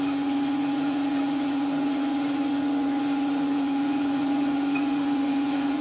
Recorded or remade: remade